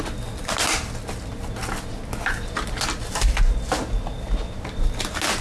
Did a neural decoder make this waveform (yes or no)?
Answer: no